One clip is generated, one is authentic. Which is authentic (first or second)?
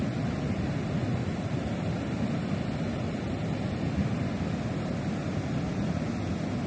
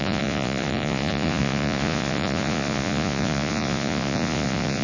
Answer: first